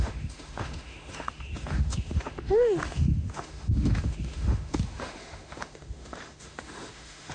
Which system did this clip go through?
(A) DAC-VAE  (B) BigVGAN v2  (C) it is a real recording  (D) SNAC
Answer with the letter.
A